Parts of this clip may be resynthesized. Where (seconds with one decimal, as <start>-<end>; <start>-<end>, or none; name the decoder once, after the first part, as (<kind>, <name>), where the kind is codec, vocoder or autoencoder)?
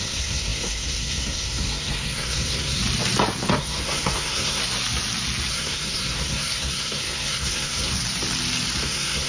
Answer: 0.0-2.8 (codec, SNAC); 3.5-4.6; 5.5-7.9; 8.8-9.3